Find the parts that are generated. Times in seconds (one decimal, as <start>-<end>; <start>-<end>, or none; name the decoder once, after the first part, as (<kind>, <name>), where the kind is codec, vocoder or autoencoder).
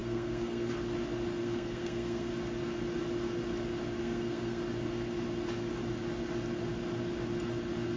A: 0.0-0.7 (codec, SNAC); 1.4-2.3; 4.0-4.6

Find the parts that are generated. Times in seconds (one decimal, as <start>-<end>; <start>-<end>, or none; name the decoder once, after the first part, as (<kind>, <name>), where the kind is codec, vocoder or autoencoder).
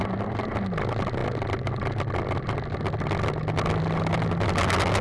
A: none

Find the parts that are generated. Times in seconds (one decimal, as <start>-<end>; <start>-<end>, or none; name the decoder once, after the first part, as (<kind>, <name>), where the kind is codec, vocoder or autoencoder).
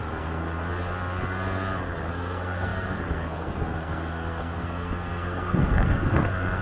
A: 0.0-0.4 (codec, SNAC); 2.1-6.6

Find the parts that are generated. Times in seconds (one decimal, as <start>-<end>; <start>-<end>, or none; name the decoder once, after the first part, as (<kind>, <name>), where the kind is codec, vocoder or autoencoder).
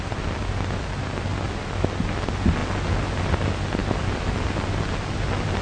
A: none